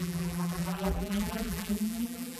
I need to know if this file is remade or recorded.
remade